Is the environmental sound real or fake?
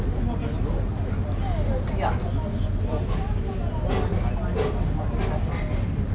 real